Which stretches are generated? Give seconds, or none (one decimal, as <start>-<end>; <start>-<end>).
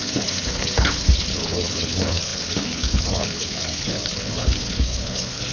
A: 0.0-5.5